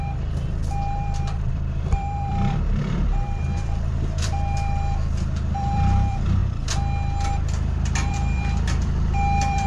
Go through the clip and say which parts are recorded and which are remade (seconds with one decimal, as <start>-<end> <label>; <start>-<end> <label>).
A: 0.0-6.4 remade; 6.4-8.1 recorded; 8.1-9.7 remade